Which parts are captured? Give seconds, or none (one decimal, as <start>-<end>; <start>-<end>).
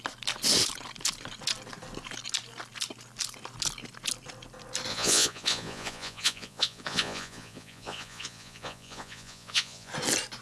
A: 0.0-4.9; 9.9-10.4